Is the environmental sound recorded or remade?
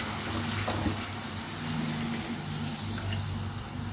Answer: recorded